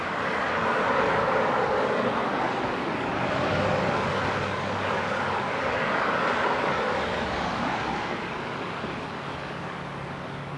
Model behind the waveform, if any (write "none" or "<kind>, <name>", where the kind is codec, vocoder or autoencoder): codec, DAC